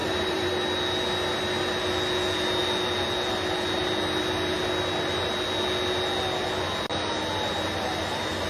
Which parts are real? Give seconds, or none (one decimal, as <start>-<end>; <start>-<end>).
0.5-8.5